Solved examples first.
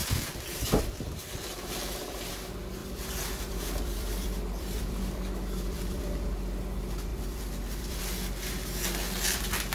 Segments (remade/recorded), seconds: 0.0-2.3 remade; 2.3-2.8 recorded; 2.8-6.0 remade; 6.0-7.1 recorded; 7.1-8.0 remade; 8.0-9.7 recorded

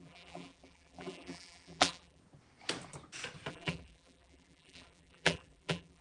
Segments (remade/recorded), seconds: 0.0-2.2 remade; 2.2-3.5 recorded; 3.5-6.0 remade

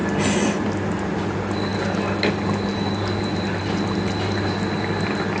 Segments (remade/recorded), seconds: 0.0-5.4 recorded

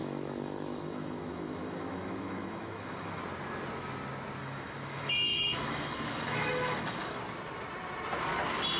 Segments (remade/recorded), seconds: 0.0-3.2 remade; 3.2-4.4 recorded; 4.4-7.2 remade; 7.2-8.8 recorded

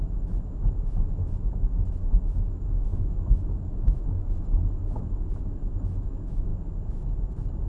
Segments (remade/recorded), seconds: 0.0-6.5 remade; 6.5-7.7 recorded

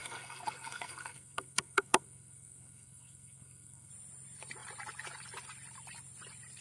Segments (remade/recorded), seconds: 0.0-3.9 remade; 3.9-6.6 recorded